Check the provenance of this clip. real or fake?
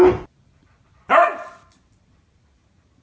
real